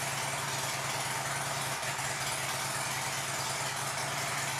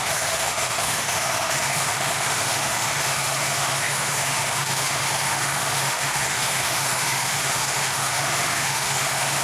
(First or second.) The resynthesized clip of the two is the second